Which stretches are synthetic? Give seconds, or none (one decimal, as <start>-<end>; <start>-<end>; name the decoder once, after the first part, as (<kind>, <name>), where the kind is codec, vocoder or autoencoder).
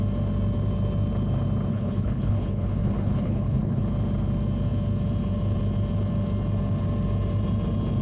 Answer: 1.7-3.8 (codec, HILCodec)